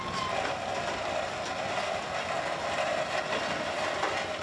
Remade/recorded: recorded